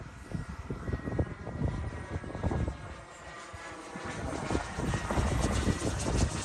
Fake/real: real